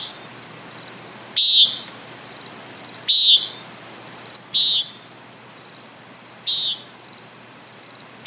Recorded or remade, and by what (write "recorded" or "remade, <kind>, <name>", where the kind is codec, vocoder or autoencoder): recorded